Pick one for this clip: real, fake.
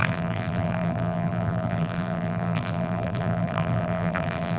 fake